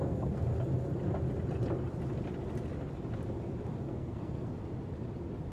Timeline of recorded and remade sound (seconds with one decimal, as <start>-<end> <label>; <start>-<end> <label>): 0.0-0.5 remade; 0.5-3.8 recorded; 3.8-4.6 remade; 4.6-5.5 recorded